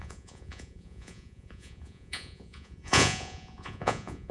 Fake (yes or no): yes